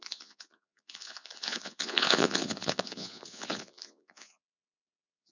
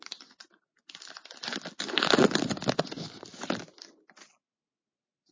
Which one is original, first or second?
second